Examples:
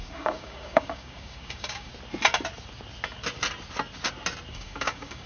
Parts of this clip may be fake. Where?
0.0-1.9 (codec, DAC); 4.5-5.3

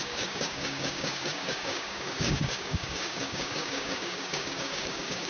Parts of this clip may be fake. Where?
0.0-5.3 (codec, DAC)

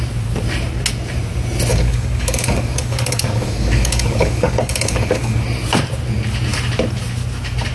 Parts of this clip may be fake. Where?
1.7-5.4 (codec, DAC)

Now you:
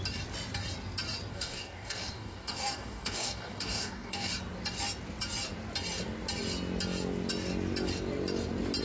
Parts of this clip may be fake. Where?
1.3-4.3 (codec, DAC)

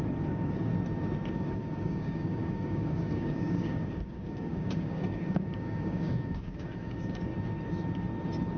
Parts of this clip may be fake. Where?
0.0-0.7 (codec, DAC); 1.3-7.3

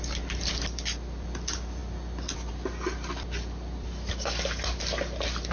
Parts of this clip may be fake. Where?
none

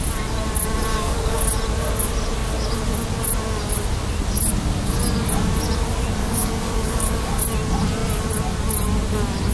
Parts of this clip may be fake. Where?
0.9-1.4 (codec, DAC); 6.2-7.4